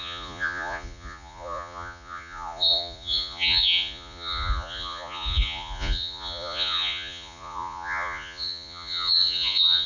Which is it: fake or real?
fake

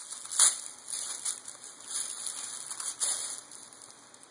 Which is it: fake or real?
real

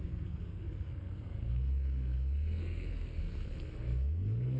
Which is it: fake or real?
fake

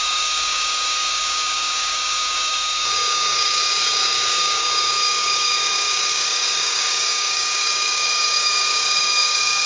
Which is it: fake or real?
fake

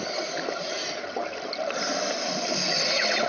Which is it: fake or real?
real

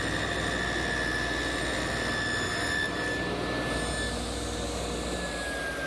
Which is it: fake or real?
real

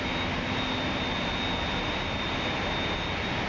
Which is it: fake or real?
real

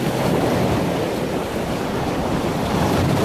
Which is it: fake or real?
real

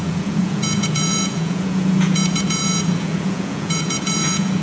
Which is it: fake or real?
fake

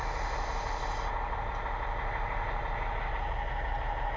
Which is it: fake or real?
real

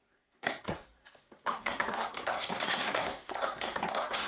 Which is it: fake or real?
fake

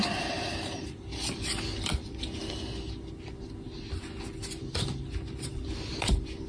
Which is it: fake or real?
real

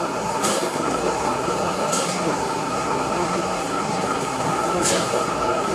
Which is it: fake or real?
fake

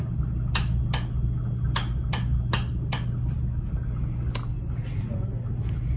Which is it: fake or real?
real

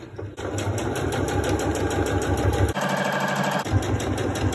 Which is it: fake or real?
real